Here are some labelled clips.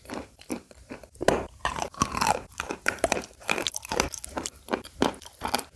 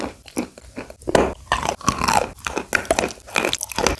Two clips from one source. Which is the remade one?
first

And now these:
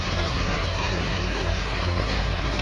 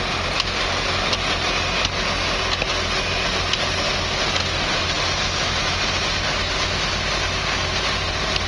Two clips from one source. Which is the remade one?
first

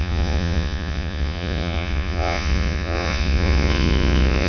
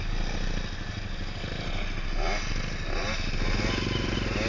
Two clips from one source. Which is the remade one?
first